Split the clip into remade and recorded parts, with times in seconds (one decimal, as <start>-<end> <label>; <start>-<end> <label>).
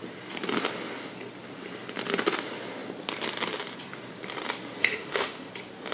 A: 0.0-4.8 recorded; 4.8-5.5 remade; 5.5-5.9 recorded